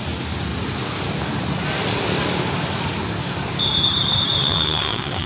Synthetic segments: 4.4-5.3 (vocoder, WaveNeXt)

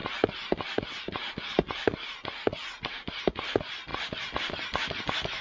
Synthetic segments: none

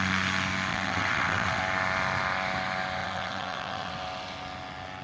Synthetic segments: 0.7-1.6 (vocoder, WaveNeXt); 3.0-3.9